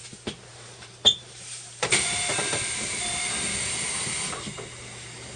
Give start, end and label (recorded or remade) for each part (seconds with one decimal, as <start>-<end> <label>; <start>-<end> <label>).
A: 0.0-0.5 recorded; 0.5-3.7 remade; 3.7-5.4 recorded

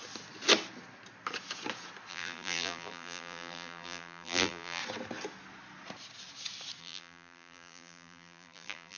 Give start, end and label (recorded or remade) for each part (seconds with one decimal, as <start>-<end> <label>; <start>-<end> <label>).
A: 0.0-2.1 recorded; 2.1-4.8 remade; 4.8-6.8 recorded; 6.8-9.0 remade

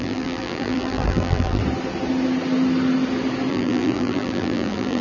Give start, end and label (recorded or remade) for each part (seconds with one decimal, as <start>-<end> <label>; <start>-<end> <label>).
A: 0.0-1.6 remade; 1.6-3.5 recorded; 3.5-5.0 remade

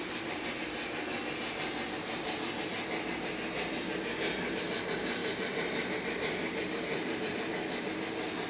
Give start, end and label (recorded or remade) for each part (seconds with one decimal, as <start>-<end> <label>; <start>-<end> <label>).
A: 0.0-5.2 recorded; 5.2-7.5 remade; 7.5-8.5 recorded

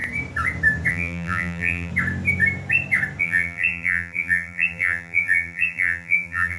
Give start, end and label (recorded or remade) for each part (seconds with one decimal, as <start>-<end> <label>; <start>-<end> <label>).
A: 0.0-0.9 recorded; 0.9-1.9 remade; 1.9-3.2 recorded; 3.2-6.6 remade

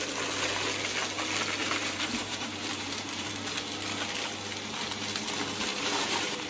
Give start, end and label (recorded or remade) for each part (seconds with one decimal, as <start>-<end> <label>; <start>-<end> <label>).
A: 0.0-1.6 recorded; 1.6-3.3 remade; 3.3-5.7 recorded; 5.7-6.5 remade

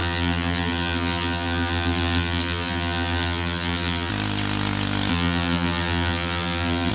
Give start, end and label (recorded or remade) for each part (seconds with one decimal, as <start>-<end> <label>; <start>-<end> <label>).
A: 0.0-4.1 remade; 4.1-5.1 recorded; 5.1-6.9 remade

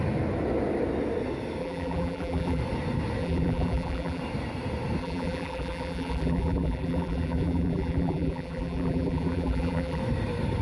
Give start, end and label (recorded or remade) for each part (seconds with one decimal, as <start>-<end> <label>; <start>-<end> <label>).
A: 0.0-1.6 recorded; 1.6-2.6 remade; 2.6-3.2 recorded; 3.2-4.2 remade; 4.2-5.0 recorded; 5.0-10.0 remade; 10.0-10.6 recorded